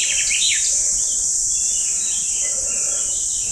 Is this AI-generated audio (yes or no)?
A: no